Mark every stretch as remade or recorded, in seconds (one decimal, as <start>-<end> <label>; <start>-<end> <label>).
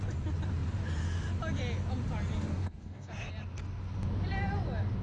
0.0-2.5 recorded; 2.5-3.1 remade; 3.1-5.0 recorded